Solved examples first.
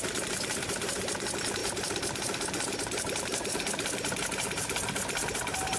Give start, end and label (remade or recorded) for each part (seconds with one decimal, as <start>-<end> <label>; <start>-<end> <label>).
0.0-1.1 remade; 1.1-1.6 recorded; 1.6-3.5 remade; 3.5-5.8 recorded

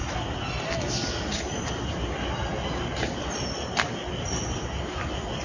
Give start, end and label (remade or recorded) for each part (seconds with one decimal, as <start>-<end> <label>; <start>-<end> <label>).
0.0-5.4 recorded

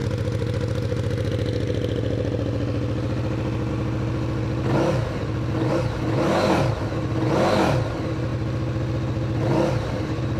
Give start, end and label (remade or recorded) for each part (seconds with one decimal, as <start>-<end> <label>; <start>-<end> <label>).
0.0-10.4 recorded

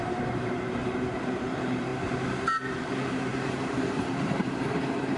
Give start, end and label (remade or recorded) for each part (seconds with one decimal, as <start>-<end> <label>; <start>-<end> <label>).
0.0-1.9 remade; 1.9-2.7 recorded; 2.7-5.2 remade

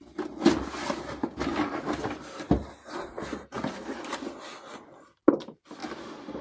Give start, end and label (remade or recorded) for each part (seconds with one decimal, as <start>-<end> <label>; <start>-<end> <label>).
0.0-6.4 recorded